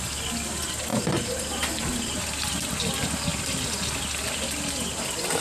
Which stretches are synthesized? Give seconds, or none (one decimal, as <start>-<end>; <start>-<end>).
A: none